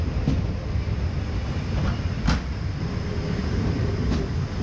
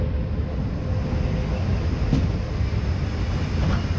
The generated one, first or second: first